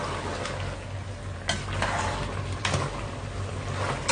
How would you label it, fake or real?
real